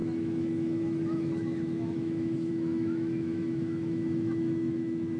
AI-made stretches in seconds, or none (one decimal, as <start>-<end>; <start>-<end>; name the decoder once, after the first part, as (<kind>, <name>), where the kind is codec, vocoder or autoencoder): 0.0-5.2 (autoencoder, DAC-VAE)